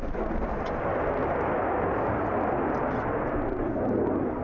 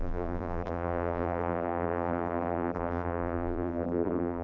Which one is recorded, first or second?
first